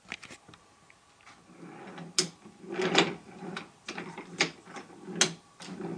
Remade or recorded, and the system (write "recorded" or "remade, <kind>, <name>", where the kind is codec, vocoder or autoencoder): recorded